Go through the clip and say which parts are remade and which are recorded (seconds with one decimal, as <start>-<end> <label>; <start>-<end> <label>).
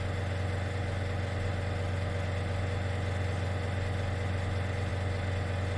0.0-5.8 recorded